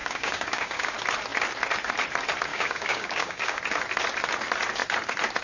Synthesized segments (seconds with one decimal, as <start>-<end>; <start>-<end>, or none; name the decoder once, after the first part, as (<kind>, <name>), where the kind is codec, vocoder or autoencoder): 0.0-0.9 (codec, DAC); 2.5-3.6